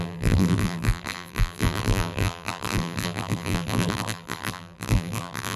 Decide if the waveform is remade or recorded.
remade